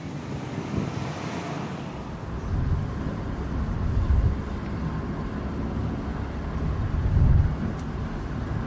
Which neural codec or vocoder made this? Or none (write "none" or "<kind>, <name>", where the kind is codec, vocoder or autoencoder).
none